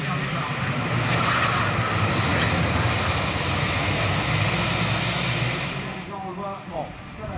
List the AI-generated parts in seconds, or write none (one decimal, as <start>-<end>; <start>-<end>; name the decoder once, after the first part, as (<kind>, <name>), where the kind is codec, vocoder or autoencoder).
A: none